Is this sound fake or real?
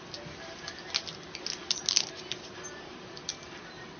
real